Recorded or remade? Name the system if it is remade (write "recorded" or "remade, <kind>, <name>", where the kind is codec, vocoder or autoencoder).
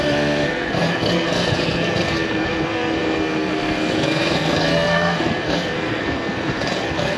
remade, codec, SNAC